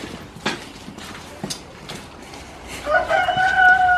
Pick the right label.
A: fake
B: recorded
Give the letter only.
B